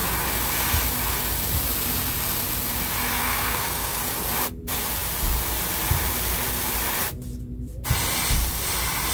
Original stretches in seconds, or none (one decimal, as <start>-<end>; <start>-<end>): 0.0-3.2; 4.0-9.1